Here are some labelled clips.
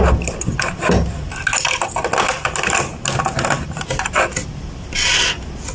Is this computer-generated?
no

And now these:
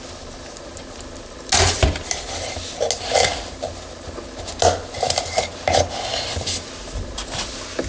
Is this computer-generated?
no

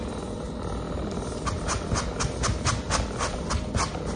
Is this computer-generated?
no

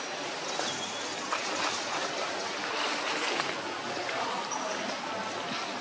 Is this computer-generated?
no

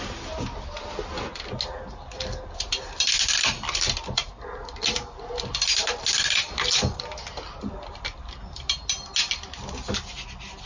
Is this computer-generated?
no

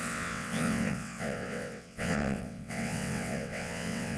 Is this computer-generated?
yes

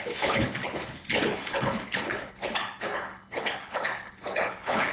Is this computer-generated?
yes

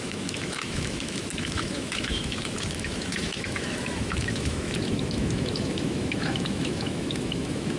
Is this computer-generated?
yes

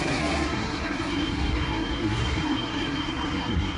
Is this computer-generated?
yes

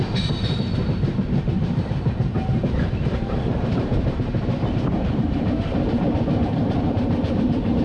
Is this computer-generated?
yes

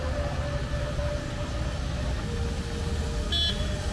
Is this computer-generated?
no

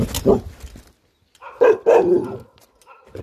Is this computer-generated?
no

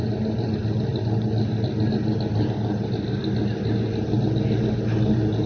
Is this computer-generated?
no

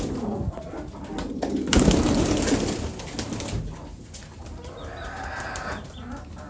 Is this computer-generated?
no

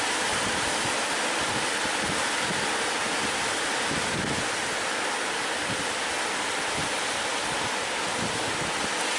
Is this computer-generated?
no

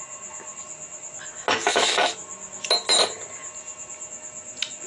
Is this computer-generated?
no